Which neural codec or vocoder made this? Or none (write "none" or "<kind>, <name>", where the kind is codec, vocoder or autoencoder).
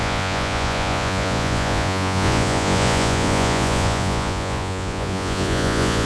vocoder, Vocos